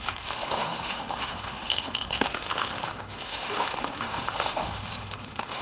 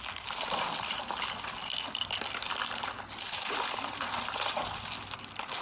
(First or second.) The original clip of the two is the second